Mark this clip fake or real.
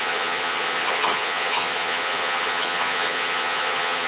fake